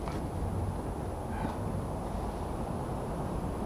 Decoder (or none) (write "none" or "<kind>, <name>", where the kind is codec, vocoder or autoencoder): none